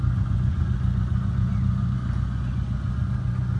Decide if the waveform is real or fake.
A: fake